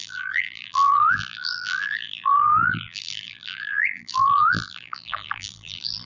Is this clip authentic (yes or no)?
no